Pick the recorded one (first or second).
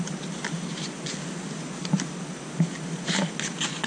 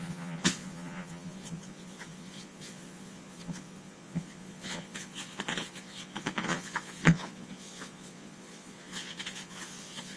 first